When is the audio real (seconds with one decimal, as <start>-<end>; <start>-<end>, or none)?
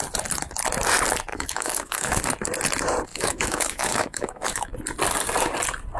0.0-1.3; 2.2-3.1; 4.7-6.0